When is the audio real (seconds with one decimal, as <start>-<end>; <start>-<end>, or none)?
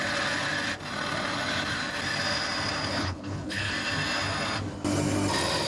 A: 0.0-2.9; 3.7-5.7